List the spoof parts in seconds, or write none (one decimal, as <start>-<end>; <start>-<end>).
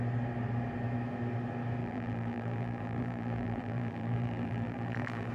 1.8-5.3